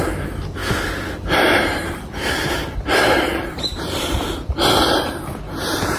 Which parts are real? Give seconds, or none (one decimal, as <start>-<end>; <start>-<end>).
none

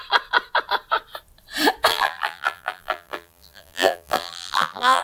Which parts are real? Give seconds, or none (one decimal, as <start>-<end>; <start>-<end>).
0.0-1.9

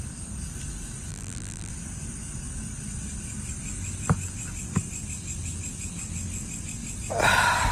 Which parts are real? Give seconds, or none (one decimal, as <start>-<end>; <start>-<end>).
0.0-1.1; 1.7-7.7

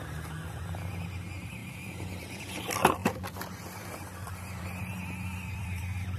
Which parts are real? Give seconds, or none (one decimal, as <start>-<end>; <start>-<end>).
0.0-1.6; 2.4-3.0; 4.6-5.3; 5.8-6.2

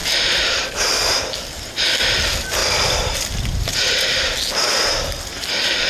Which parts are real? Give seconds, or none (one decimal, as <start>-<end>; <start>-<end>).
0.9-2.6; 3.8-5.9

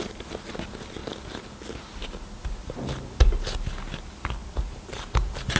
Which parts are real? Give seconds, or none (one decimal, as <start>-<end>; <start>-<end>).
0.0-4.4

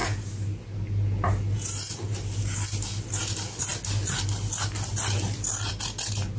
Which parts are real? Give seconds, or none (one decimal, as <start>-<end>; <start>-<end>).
0.0-6.4